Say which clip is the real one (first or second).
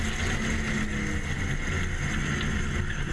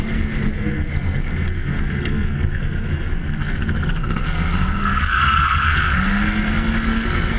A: first